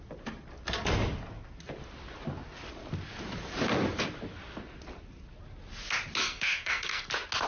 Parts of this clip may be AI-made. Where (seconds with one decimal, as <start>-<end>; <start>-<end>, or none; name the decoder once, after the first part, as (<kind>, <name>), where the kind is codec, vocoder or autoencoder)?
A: 6.2-7.1 (codec, SNAC)